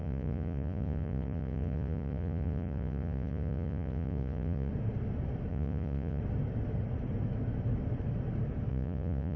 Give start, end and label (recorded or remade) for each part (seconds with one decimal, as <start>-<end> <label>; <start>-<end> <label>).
0.0-4.7 remade; 4.7-5.5 recorded; 5.5-6.2 remade; 6.2-8.7 recorded; 8.7-9.4 remade